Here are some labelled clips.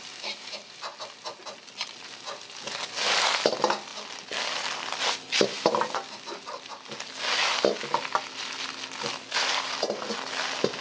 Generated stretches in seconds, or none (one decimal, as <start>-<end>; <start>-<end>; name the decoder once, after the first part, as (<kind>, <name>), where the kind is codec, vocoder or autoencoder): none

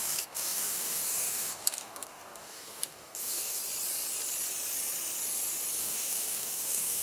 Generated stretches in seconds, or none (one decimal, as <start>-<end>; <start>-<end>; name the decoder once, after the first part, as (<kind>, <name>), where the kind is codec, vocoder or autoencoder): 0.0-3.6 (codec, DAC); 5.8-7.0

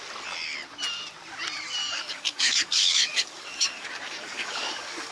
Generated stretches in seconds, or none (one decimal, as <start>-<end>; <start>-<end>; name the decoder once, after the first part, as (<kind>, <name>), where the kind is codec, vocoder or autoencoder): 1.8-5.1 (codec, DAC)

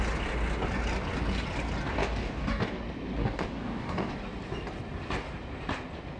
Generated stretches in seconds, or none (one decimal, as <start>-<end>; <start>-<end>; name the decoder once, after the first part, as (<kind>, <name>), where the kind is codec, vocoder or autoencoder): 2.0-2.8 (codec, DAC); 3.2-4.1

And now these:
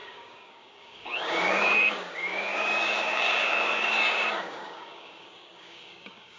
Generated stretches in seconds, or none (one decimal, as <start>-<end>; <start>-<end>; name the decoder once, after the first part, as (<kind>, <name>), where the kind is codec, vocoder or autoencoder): 0.0-6.4 (codec, DAC)